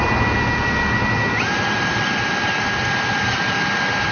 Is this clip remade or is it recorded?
recorded